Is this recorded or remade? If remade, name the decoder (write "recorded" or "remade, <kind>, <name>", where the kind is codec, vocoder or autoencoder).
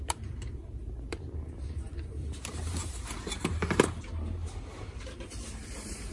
remade, vocoder, BigVGAN v2